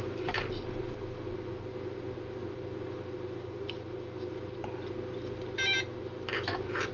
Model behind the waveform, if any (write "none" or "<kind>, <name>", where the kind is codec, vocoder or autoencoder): none